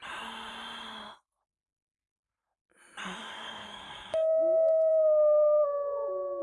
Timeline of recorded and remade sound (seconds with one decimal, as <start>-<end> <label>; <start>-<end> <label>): 0.0-3.2 recorded; 3.2-4.9 remade; 4.9-6.4 recorded